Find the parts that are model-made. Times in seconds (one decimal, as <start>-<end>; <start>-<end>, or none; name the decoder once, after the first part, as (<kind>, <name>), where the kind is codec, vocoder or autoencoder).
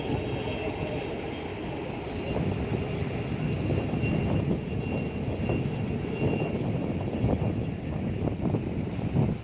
none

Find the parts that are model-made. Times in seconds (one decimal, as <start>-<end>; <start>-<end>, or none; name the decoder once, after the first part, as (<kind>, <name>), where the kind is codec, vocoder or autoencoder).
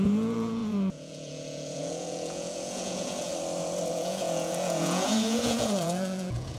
0.0-3.3 (vocoder, Vocos); 3.9-6.6